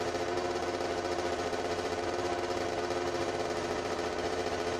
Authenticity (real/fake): fake